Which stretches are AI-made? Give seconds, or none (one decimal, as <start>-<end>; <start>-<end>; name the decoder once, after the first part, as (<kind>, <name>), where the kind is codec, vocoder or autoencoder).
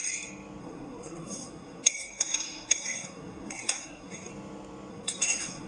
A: 0.6-4.3 (codec, SNAC); 4.9-5.7